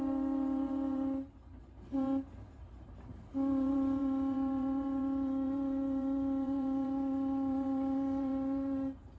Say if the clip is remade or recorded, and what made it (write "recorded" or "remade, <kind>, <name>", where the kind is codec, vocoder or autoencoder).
remade, vocoder, BigVGAN v2